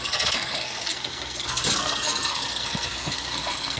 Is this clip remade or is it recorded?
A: remade